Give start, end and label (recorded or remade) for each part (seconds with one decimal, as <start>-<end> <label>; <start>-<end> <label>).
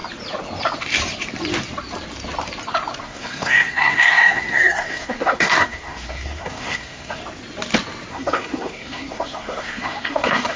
0.0-3.0 recorded; 3.0-7.2 remade; 7.2-8.1 recorded; 8.1-10.6 remade